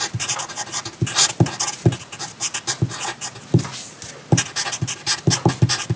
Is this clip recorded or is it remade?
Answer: recorded